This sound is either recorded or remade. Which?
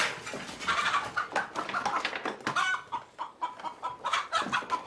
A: recorded